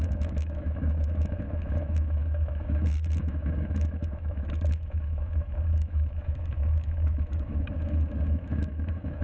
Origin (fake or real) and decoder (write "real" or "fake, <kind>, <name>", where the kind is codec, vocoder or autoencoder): fake, autoencoder, DAC-VAE